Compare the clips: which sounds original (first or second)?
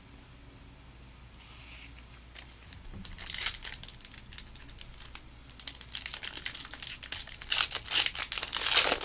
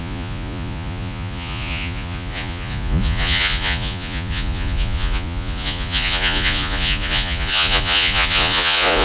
first